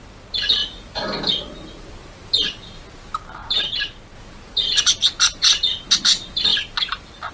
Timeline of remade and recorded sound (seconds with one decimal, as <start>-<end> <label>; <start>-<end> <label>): 0.0-3.4 remade; 3.4-6.0 recorded; 6.0-7.3 remade